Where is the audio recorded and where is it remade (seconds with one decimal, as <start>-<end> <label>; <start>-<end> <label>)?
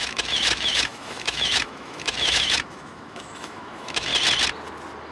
0.0-4.1 remade; 4.1-5.1 recorded